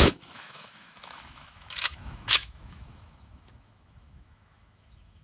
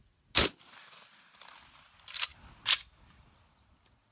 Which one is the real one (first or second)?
second